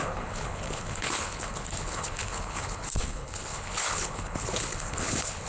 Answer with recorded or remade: remade